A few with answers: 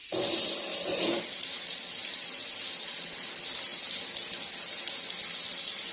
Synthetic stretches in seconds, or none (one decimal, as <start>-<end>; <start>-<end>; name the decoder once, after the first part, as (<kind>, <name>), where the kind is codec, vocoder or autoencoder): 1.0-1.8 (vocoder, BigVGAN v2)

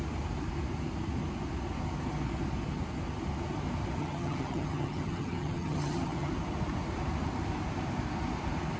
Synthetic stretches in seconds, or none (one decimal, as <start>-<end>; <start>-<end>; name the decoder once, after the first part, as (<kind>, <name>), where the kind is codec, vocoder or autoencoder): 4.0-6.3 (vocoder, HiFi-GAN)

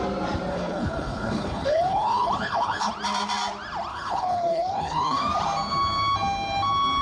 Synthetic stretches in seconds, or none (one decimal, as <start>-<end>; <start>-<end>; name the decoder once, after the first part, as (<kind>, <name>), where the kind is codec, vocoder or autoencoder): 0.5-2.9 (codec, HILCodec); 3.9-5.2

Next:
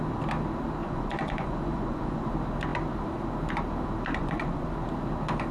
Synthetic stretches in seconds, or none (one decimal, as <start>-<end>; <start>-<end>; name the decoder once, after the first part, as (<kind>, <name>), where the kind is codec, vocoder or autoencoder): 0.8-2.3 (vocoder, Vocos); 4.2-4.7

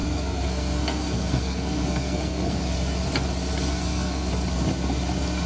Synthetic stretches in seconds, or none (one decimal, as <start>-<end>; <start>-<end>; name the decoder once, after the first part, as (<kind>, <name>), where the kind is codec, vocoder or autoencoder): 0.0-2.6 (codec, SNAC); 3.7-4.3